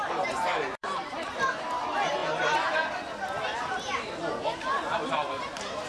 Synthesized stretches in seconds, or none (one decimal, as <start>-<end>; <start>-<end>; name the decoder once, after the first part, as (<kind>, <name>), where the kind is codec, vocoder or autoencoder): 0.7-1.7 (vocoder, BigVGAN v2)